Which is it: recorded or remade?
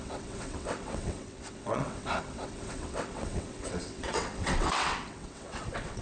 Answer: remade